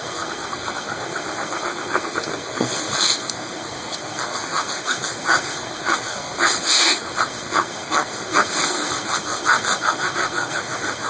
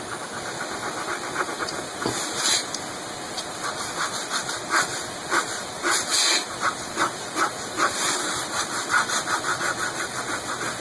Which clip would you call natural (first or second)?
second